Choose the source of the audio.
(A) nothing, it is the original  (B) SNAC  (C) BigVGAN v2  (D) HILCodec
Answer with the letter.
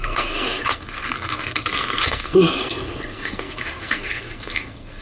B